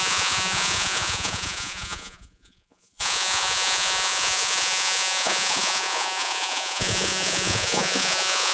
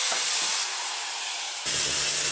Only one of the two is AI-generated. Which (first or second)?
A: first